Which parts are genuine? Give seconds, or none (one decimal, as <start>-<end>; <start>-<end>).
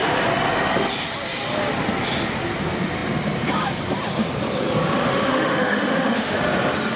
0.0-5.0; 6.4-7.0